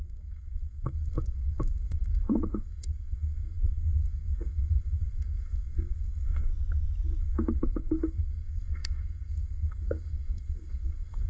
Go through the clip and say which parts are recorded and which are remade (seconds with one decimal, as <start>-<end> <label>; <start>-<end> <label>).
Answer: 0.0-6.5 remade; 6.5-7.2 recorded; 7.2-11.3 remade